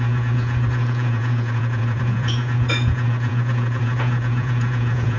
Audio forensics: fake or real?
fake